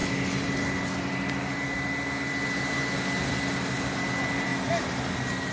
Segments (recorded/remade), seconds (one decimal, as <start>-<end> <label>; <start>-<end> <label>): 0.0-5.5 recorded